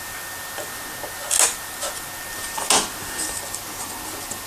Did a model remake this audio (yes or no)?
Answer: no